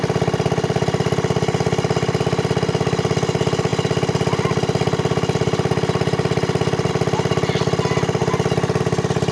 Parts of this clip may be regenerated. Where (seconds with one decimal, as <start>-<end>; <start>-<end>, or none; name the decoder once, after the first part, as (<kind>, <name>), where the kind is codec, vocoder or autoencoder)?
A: none